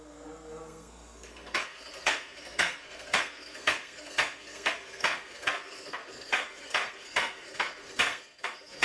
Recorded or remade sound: remade